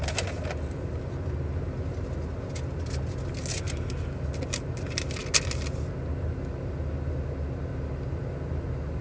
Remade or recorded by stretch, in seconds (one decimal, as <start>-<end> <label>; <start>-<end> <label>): 0.0-9.0 recorded